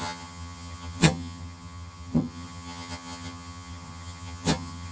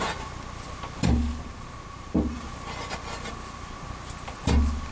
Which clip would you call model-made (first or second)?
first